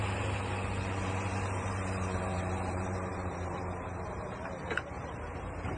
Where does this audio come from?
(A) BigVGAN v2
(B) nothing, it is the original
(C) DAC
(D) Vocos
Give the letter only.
A